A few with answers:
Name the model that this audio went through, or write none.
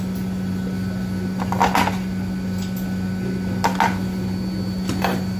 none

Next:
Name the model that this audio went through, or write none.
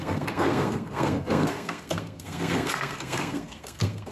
codec, SNAC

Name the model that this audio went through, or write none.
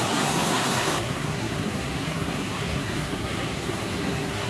codec, SNAC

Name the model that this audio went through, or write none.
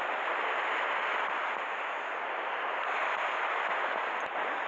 none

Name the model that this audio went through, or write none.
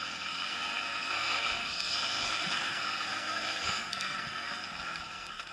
codec, SNAC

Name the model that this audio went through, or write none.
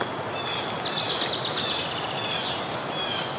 none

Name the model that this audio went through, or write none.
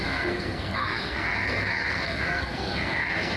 codec, SNAC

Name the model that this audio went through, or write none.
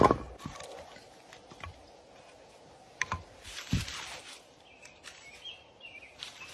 none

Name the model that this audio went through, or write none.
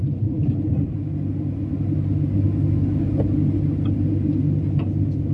none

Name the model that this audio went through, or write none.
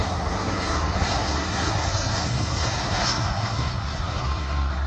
codec, SNAC